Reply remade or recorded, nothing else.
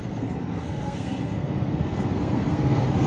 remade